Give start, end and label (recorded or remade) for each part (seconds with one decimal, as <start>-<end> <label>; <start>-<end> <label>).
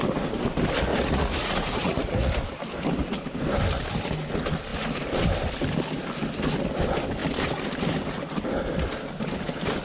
0.0-0.9 recorded; 0.9-2.3 remade; 2.3-9.8 recorded